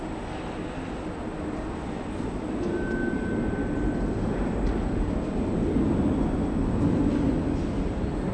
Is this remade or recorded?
recorded